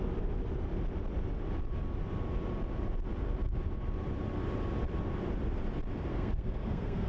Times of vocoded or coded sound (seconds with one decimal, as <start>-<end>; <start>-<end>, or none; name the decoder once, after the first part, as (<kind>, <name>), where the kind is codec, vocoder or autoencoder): 6.1-7.1 (codec, SNAC)